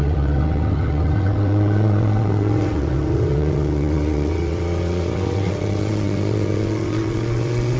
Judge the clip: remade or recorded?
remade